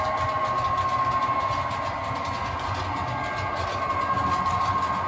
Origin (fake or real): real